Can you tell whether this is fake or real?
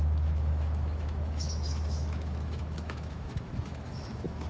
fake